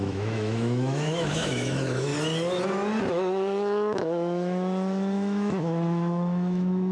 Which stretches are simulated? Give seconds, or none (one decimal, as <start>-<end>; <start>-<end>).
0.0-2.1; 3.1-6.9